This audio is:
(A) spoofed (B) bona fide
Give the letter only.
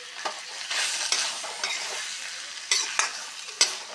B